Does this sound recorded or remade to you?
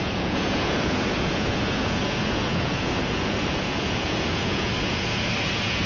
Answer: remade